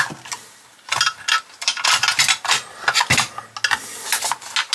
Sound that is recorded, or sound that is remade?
recorded